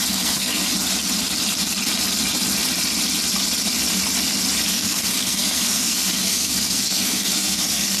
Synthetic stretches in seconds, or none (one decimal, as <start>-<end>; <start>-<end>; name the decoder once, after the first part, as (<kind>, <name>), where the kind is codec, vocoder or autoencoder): 0.0-0.7 (codec, SNAC); 4.7-8.0